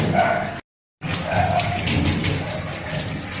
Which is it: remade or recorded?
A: recorded